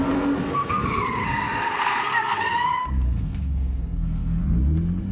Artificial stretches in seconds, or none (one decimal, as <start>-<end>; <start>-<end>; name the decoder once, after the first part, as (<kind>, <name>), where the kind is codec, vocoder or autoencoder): 0.4-2.4 (codec, SNAC); 2.8-4.4